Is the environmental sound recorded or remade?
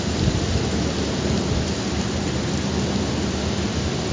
recorded